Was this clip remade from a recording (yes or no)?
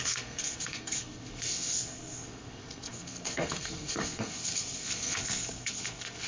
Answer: yes